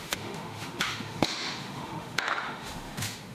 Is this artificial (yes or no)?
yes